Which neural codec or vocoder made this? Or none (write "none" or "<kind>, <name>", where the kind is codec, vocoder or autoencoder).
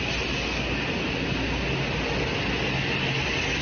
none